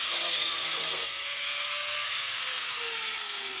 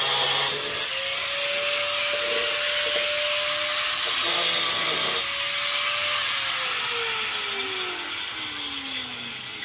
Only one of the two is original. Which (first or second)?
second